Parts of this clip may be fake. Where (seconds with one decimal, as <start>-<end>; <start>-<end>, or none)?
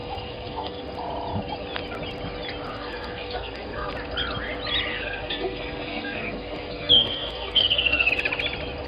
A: 0.0-0.8; 2.7-3.9; 4.9-8.1